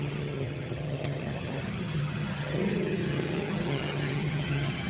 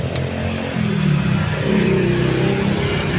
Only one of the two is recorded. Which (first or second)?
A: second